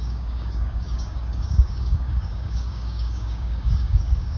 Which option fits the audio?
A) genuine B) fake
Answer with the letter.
B